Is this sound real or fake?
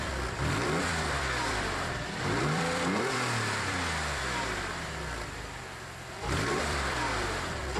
fake